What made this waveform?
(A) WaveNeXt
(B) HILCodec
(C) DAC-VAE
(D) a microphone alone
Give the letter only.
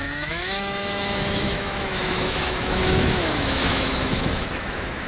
C